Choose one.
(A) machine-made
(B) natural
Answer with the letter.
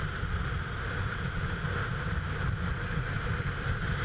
B